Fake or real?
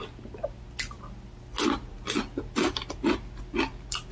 real